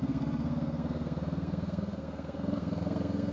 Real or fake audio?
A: fake